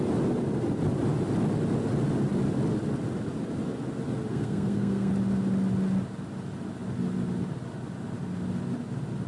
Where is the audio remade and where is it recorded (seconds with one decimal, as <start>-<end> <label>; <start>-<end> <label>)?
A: 0.0-4.3 recorded; 4.3-5.1 remade; 5.1-9.3 recorded